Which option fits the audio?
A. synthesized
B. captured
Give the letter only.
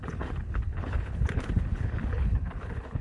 A